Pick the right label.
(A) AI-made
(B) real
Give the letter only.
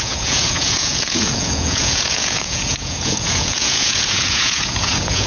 A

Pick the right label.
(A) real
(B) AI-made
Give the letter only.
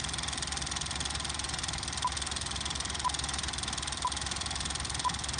A